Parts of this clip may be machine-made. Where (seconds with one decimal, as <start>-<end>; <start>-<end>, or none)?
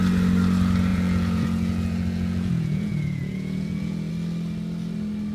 0.9-4.1